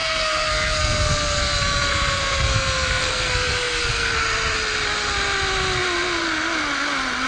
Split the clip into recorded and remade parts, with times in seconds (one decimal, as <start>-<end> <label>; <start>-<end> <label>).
0.0-4.2 remade; 4.2-7.3 recorded